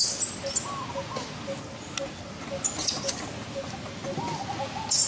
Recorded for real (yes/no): yes